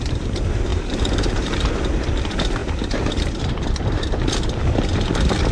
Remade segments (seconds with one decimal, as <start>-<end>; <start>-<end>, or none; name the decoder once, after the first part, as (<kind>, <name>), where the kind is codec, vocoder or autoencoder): 0.7-1.7 (vocoder, BigVGAN v2); 2.6-4.3